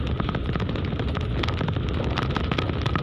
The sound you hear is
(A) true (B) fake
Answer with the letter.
A